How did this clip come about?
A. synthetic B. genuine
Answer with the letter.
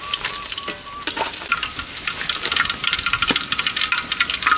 B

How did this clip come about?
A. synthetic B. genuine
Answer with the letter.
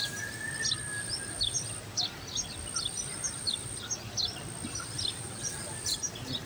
B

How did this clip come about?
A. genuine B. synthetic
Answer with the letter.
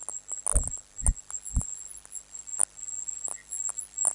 A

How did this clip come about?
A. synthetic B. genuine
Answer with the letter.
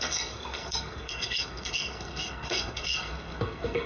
A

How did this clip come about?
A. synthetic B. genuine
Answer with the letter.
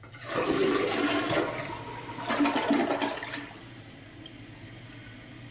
B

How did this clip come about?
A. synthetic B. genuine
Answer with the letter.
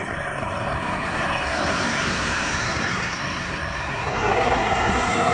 A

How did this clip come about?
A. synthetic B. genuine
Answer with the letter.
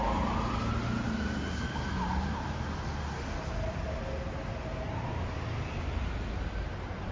B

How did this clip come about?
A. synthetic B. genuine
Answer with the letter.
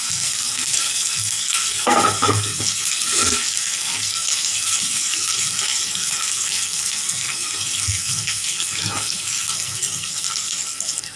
A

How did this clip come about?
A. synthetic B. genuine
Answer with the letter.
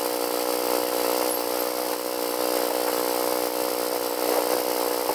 B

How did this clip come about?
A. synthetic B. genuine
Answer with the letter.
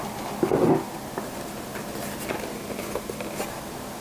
B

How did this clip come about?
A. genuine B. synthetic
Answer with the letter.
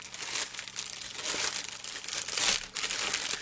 A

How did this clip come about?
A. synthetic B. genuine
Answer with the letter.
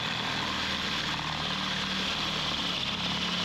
B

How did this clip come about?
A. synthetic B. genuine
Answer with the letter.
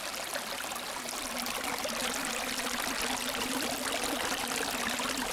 B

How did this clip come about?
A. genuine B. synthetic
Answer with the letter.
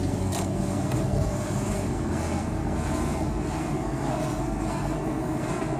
B